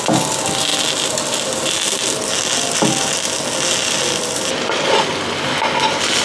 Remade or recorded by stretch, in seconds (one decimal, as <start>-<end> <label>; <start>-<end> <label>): 0.0-6.2 recorded